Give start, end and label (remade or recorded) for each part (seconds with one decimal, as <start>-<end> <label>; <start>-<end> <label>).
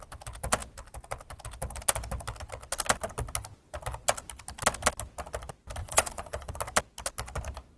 0.0-5.8 recorded; 5.8-6.5 remade; 6.5-7.8 recorded